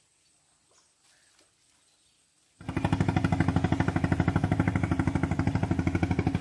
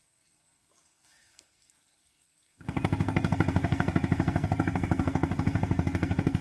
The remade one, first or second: second